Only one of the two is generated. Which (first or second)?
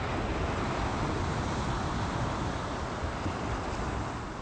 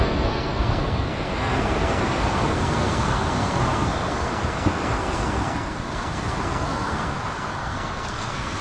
second